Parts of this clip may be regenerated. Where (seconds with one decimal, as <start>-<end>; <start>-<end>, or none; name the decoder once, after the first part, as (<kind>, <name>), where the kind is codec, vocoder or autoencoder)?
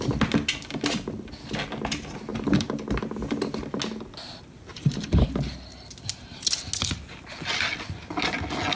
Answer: 2.3-2.8 (vocoder, BigVGAN v2); 4.7-5.3